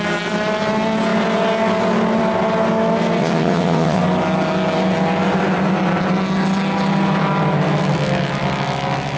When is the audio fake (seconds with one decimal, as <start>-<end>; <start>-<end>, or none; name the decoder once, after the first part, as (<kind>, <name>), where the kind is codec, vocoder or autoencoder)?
3.2-4.0 (vocoder, WaveNeXt)